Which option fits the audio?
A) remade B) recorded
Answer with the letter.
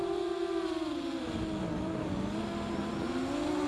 B